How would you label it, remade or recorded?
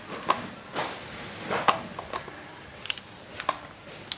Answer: recorded